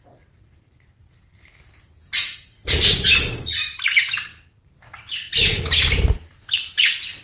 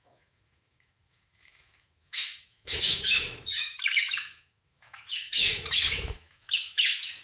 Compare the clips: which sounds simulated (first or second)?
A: second